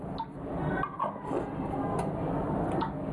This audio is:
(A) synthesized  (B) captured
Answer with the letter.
B